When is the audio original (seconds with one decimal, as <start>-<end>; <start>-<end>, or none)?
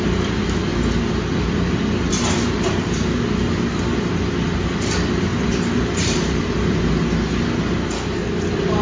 0.0-0.7; 1.7-2.1; 3.3-5.3; 7.4-8.8